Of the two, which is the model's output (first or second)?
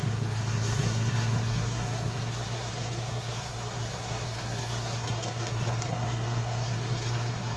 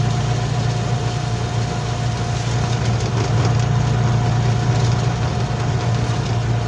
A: first